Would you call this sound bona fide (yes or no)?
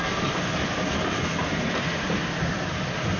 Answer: yes